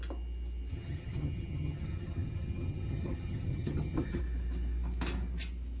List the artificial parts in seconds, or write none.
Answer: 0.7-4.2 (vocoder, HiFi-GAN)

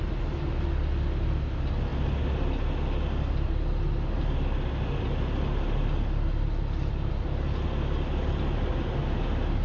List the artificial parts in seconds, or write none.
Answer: none

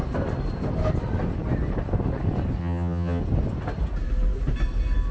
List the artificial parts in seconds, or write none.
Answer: 2.6-3.2 (vocoder, HiFi-GAN)

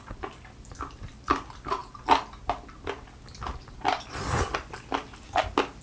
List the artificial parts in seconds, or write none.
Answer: none